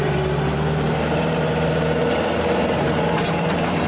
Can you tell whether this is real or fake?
fake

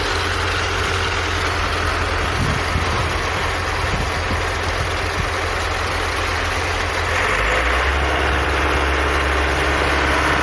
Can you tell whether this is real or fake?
real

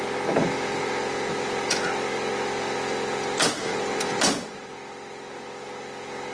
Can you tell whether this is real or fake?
real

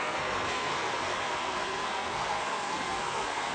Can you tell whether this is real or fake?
fake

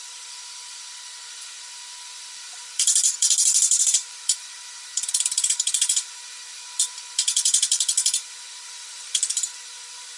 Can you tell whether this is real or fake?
fake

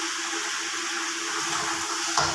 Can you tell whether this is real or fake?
real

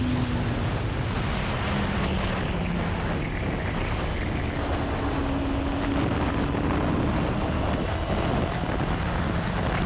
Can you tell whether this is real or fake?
real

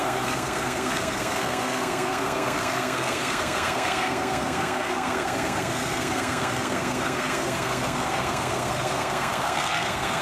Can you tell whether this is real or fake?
fake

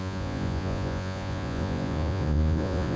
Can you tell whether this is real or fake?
fake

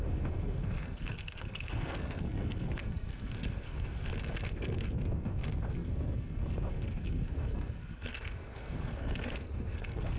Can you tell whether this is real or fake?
fake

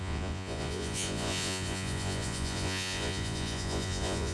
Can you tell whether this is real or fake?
fake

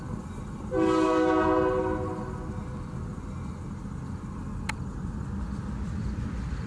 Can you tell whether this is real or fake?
real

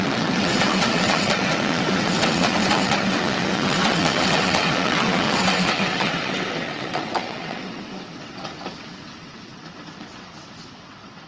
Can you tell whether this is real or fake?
fake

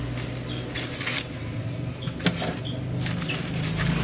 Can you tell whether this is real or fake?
real